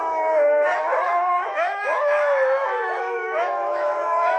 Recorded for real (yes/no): no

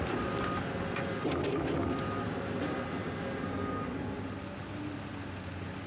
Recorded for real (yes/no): yes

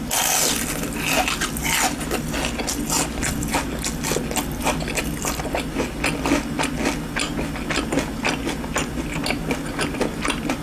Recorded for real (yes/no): yes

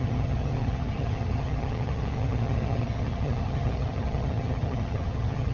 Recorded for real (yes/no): no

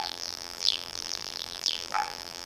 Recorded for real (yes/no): no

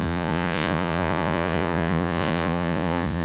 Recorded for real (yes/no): no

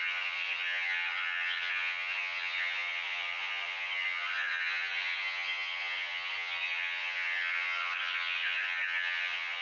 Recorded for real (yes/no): no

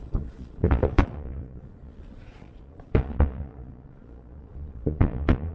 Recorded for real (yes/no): no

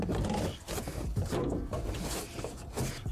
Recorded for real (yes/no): yes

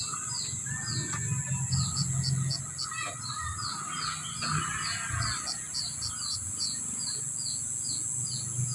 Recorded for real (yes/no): yes